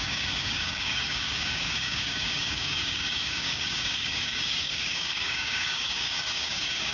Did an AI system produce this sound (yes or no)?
yes